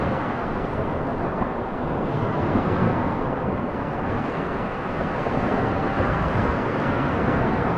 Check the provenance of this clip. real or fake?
fake